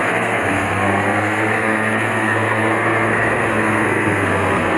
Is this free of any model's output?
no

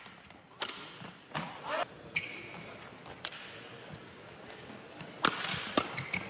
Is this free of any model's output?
yes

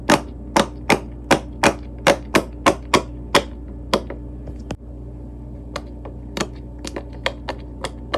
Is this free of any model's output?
yes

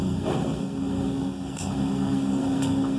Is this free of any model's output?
no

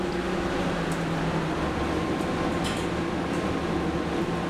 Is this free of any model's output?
yes